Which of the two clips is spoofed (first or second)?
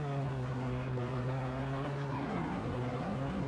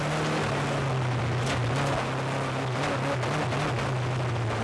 first